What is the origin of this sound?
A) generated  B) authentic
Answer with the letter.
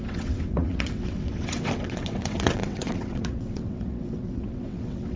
A